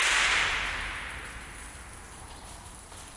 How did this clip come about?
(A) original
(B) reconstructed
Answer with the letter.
B